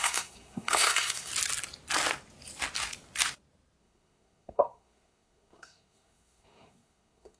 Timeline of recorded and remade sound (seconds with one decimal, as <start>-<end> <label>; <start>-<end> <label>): 0.0-1.3 remade; 1.3-3.8 recorded; 3.8-7.4 remade